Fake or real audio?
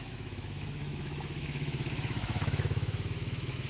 fake